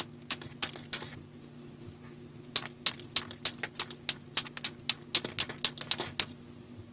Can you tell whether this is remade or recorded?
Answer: recorded